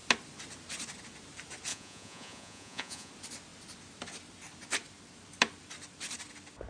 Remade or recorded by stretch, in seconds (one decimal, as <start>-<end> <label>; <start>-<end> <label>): 0.0-1.7 recorded; 1.7-3.1 remade; 3.1-6.7 recorded